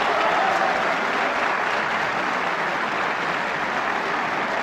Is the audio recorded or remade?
recorded